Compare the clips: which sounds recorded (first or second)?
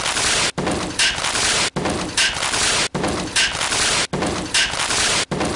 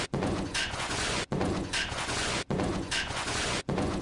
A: first